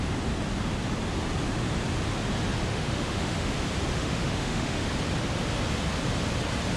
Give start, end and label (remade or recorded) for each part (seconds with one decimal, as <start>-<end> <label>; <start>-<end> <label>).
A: 0.0-2.7 recorded; 2.7-3.5 remade; 3.5-3.9 recorded; 3.9-4.9 remade; 4.9-6.8 recorded